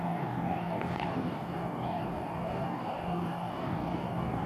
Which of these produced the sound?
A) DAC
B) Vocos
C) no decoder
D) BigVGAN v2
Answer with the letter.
A